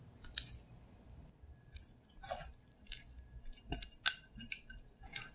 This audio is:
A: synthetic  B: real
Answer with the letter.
B